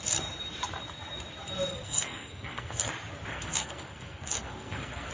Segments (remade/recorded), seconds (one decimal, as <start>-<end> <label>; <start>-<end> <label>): 0.0-1.7 recorded; 1.7-2.9 remade; 2.9-3.3 recorded; 3.3-5.1 remade